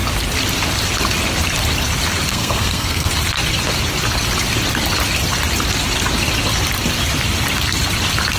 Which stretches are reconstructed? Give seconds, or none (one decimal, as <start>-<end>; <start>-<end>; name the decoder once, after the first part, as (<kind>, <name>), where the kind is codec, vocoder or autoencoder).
2.3-3.1 (codec, SNAC)